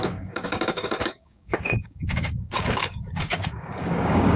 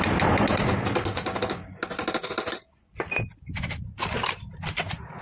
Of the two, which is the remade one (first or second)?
first